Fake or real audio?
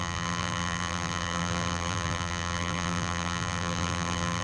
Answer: fake